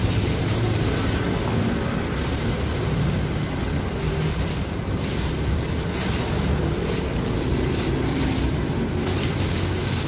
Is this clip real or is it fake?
real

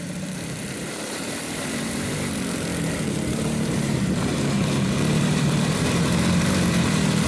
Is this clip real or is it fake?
fake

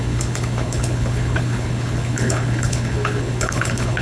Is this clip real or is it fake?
fake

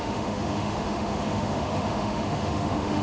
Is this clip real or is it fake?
fake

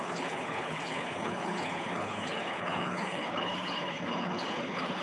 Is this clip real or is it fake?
fake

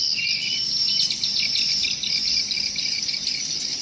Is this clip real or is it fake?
real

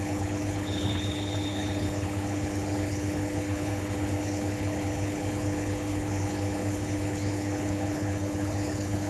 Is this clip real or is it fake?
fake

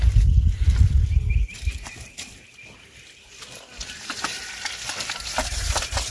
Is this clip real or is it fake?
real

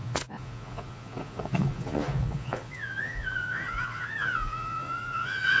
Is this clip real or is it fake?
fake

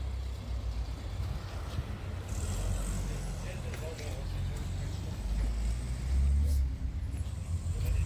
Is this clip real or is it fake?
real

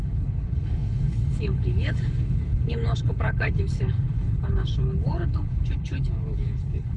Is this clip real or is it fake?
fake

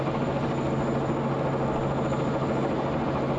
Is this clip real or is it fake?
real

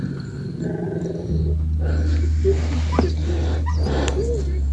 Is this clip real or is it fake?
real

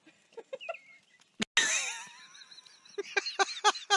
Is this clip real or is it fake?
real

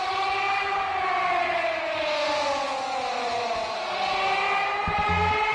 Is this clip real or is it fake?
real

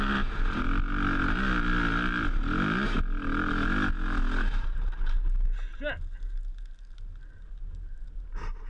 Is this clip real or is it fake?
real